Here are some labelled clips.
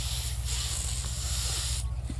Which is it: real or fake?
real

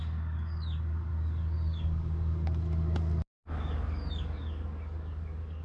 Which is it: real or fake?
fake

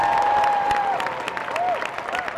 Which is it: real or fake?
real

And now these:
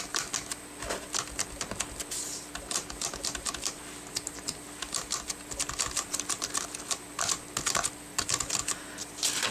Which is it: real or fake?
real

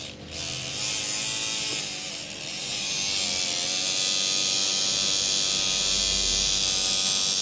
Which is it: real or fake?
real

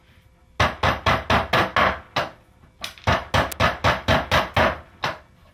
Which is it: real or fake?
real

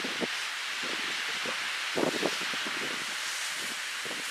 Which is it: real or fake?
real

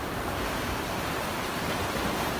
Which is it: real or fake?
fake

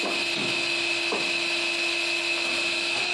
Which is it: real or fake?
real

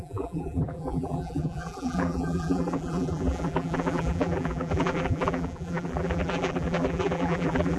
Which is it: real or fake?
fake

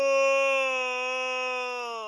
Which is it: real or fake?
real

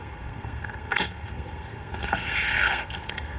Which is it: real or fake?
fake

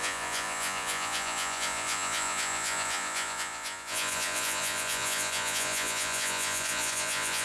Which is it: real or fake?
fake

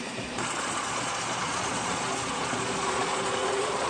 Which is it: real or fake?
fake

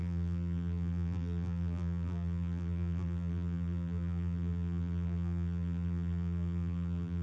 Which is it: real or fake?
fake